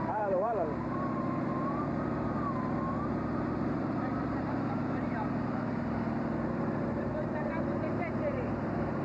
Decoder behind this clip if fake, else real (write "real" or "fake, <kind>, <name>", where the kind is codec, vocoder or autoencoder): fake, vocoder, BigVGAN v2